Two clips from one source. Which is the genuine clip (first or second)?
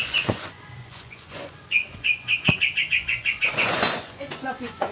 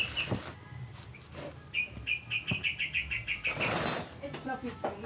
second